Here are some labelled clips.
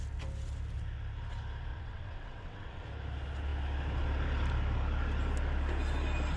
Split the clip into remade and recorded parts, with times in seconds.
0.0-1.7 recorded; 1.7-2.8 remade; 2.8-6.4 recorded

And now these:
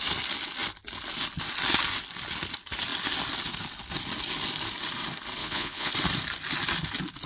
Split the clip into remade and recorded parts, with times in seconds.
0.0-5.4 recorded; 5.4-5.9 remade; 5.9-7.3 recorded

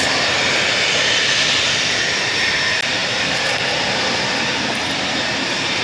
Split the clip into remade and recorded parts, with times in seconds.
0.0-5.8 recorded

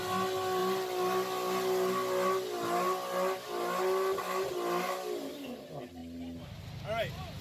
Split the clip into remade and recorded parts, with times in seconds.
0.0-7.4 recorded

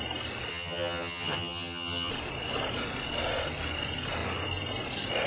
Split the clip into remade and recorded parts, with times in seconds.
0.0-0.5 recorded; 0.5-2.1 remade; 2.1-5.3 recorded